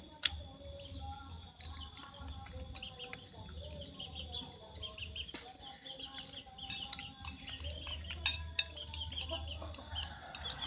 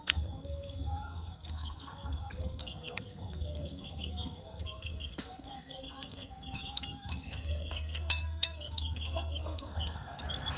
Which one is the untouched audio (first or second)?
first